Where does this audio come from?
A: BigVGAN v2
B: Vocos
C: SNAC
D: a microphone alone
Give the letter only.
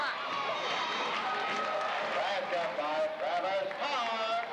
D